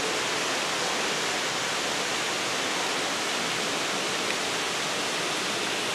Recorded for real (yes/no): yes